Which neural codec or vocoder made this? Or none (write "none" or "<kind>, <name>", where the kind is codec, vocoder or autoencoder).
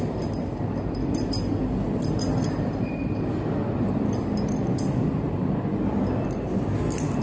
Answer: vocoder, BigVGAN v2